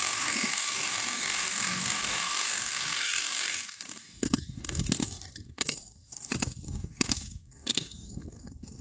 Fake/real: fake